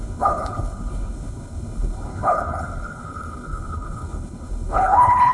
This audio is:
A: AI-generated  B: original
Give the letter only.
A